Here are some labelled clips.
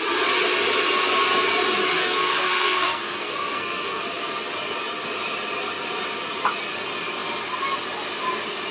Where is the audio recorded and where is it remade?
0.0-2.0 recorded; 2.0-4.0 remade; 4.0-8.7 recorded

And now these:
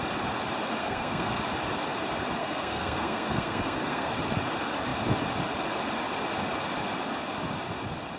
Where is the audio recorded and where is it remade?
0.0-0.8 recorded; 0.8-1.4 remade; 1.4-2.4 recorded; 2.4-4.1 remade; 4.1-8.2 recorded

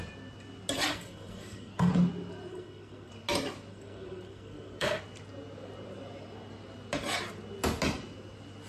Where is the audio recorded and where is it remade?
0.0-0.9 recorded; 0.9-1.9 remade; 1.9-2.5 recorded; 2.5-3.1 remade; 3.1-3.7 recorded; 3.7-5.0 remade; 5.0-8.7 recorded

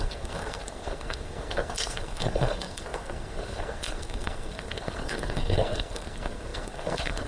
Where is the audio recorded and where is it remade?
0.0-7.3 remade

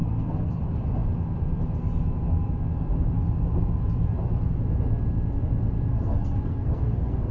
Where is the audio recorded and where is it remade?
0.0-0.6 remade; 0.6-5.9 recorded; 5.9-7.3 remade

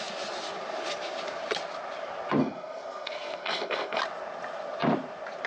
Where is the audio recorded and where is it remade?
0.0-2.4 recorded; 2.4-4.0 remade; 4.0-5.5 recorded